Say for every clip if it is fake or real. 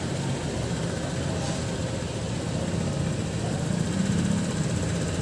real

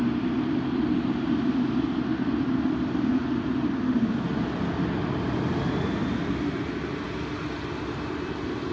real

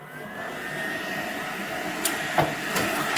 real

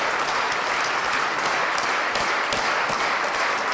real